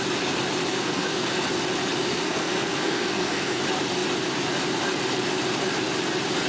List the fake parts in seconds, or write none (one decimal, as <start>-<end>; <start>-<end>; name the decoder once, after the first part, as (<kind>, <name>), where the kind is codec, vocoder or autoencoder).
0.7-1.3 (codec, SNAC); 2.1-3.6